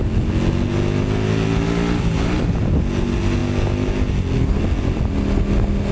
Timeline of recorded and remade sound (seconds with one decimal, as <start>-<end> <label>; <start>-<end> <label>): 0.0-5.9 recorded